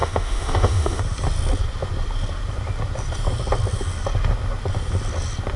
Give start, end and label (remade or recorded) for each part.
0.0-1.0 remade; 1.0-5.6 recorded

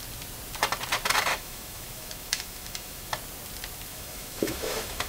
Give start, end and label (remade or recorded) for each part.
0.0-1.3 recorded; 1.3-3.1 remade; 3.1-3.9 recorded; 3.9-5.1 remade

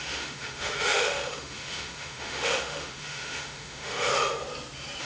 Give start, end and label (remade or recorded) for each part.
0.0-4.1 remade; 4.1-5.0 recorded

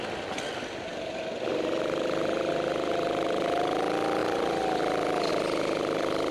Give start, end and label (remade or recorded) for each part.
0.0-6.3 recorded

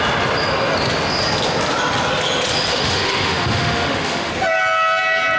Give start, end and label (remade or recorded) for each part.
0.0-2.7 recorded; 2.7-4.3 remade; 4.3-5.4 recorded

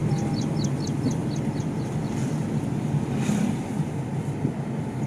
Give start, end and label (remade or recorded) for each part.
0.0-5.1 recorded

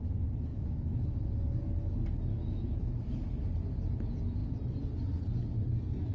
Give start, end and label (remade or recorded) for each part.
0.0-0.5 recorded; 0.5-1.2 remade; 1.2-2.3 recorded; 2.3-3.3 remade; 3.3-6.1 recorded

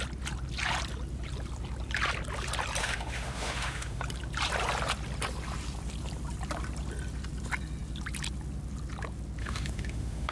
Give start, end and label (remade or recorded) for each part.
0.0-2.8 recorded; 2.8-4.0 remade; 4.0-9.4 recorded; 9.4-10.3 remade